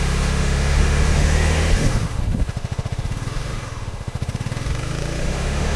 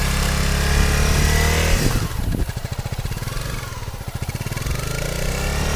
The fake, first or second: first